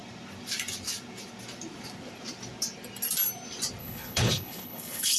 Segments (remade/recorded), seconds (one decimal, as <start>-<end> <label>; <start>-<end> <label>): 0.0-3.8 recorded; 3.8-5.2 remade